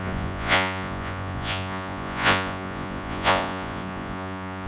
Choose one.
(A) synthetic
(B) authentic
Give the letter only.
A